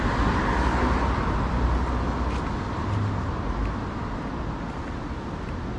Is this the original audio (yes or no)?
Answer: yes